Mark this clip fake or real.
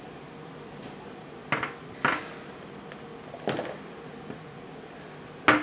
real